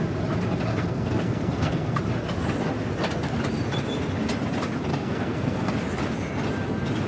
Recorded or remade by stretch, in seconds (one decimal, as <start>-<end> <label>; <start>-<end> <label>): 0.0-0.7 recorded; 0.7-2.0 remade; 2.0-4.9 recorded; 4.9-5.7 remade; 5.7-7.1 recorded